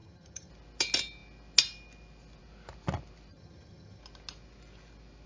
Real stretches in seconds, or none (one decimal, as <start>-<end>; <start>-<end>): 0.5-3.3; 4.0-5.3